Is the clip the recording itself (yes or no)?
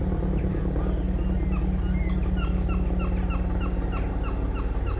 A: yes